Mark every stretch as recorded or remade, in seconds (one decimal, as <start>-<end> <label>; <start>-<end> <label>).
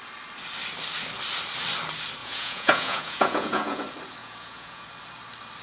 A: 0.0-2.2 recorded; 2.2-3.8 remade; 3.8-4.2 recorded; 4.2-4.9 remade; 4.9-5.6 recorded